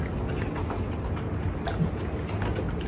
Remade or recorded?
recorded